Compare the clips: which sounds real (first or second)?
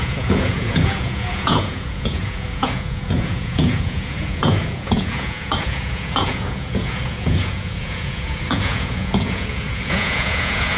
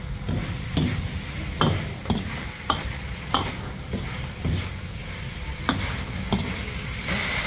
second